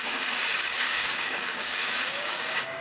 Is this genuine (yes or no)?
no